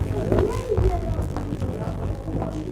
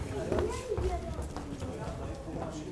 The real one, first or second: second